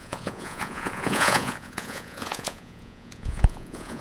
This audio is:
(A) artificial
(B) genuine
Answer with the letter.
A